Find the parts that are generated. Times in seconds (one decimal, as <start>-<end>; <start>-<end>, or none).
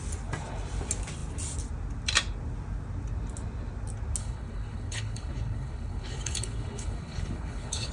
4.2-7.9